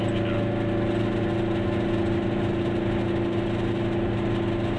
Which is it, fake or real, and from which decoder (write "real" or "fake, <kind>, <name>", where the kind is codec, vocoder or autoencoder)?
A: real